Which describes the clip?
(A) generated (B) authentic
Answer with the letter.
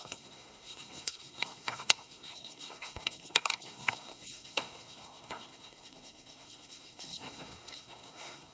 A